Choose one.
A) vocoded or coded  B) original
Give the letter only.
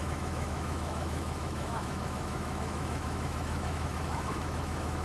A